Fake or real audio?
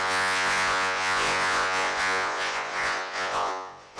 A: fake